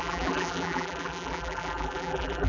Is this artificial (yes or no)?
yes